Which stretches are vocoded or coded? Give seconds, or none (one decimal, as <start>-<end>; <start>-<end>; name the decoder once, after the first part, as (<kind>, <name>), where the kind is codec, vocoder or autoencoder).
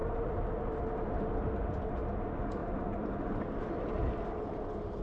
0.0-0.5 (vocoder, BigVGAN v2); 2.6-3.5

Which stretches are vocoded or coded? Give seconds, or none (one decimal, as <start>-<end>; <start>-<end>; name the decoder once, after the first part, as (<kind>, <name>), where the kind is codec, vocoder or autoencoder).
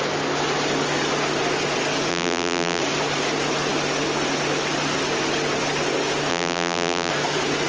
2.1-2.8 (vocoder, BigVGAN v2); 6.3-7.1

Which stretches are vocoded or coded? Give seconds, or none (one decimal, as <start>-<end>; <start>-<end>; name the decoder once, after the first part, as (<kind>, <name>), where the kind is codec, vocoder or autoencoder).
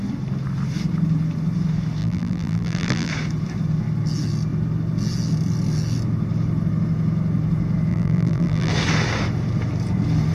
2.0-3.1 (vocoder, BigVGAN v2); 7.9-8.7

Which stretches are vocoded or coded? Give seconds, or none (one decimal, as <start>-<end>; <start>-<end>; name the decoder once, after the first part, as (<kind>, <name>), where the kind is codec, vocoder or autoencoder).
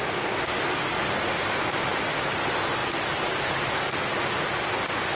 none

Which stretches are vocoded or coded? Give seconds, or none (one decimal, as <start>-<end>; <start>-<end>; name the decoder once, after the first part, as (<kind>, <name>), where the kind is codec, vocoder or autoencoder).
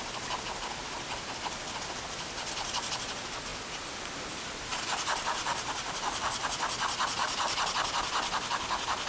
4.7-6.3 (vocoder, BigVGAN v2); 7.2-7.7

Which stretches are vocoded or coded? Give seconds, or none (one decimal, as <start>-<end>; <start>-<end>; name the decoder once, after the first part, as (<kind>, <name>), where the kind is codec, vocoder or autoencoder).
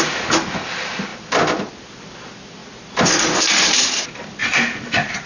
1.1-1.7 (vocoder, BigVGAN v2); 4.4-5.3